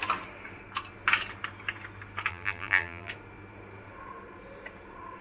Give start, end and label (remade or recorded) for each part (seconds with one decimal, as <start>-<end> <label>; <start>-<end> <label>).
0.0-2.3 recorded; 2.3-3.1 remade; 3.1-5.2 recorded